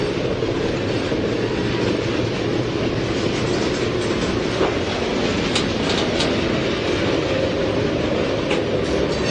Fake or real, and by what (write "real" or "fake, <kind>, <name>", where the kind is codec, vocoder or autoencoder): real